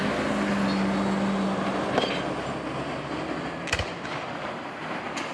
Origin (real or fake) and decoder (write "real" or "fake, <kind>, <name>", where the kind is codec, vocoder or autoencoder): real